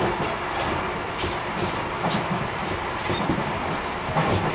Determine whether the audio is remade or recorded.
recorded